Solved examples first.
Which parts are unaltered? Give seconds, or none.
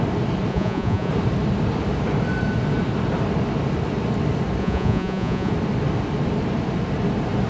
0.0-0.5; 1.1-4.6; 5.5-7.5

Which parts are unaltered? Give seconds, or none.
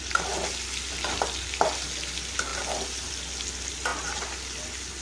0.0-5.0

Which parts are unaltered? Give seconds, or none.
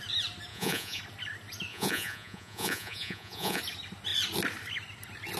0.0-0.5; 1.0-1.7; 3.6-5.4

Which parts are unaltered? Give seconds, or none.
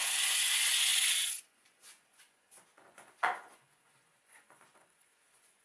none